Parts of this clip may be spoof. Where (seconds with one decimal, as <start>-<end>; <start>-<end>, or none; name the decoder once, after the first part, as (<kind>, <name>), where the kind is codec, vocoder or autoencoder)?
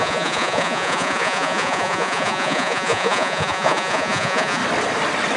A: 0.0-4.6 (vocoder, Vocos)